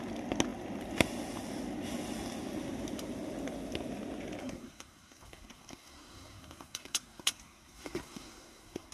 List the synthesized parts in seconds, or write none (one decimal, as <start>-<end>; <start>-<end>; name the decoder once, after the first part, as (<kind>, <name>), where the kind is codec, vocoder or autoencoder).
4.4-8.9 (codec, SNAC)